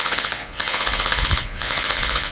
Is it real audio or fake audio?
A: fake